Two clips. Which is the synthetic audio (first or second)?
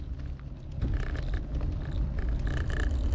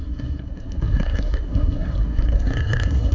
second